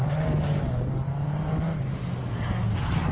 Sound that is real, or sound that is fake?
real